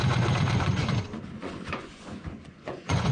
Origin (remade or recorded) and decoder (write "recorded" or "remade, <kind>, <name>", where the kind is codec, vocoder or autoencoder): remade, vocoder, Vocos